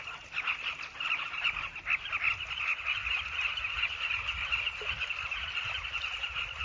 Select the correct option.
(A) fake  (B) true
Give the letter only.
B